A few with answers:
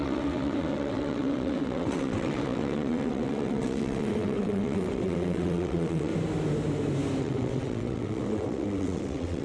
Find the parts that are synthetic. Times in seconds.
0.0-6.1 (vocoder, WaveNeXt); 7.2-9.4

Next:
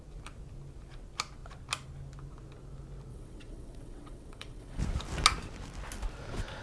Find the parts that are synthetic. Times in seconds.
3.1-4.8 (vocoder, WaveNeXt)

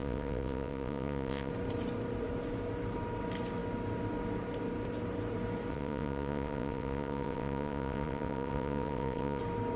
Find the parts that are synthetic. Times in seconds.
0.0-1.5 (vocoder, WaveNeXt); 5.7-9.4

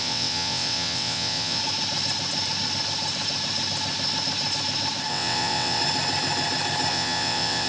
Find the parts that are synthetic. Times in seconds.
0.0-1.6 (vocoder, WaveNeXt); 5.1-5.8; 6.9-7.7